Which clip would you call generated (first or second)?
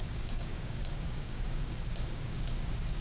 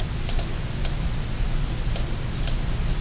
first